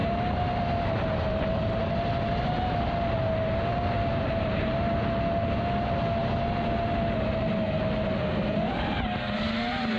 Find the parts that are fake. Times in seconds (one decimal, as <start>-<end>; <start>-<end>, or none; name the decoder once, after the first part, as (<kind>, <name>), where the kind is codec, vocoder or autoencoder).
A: 4.1-4.9 (vocoder, BigVGAN v2)